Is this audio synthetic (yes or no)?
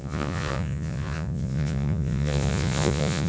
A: yes